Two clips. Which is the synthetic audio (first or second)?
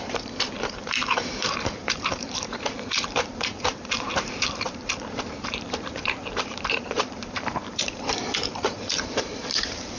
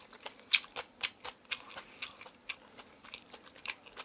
first